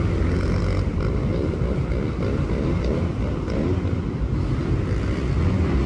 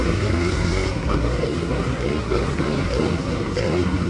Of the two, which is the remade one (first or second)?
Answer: second